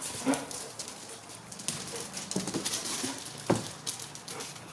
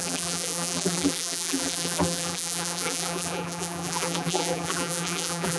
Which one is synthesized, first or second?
second